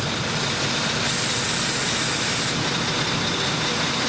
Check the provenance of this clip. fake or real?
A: real